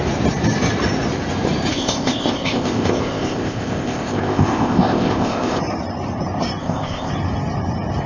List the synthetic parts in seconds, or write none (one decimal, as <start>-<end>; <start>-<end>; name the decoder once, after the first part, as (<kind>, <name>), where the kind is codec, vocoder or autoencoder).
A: 1.7-5.6 (codec, ZipCodec); 6.6-7.1